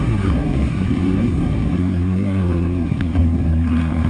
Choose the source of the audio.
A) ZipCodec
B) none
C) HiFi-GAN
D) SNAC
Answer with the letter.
D